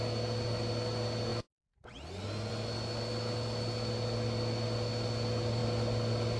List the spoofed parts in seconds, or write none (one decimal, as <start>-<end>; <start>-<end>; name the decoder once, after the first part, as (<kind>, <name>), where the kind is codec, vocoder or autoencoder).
none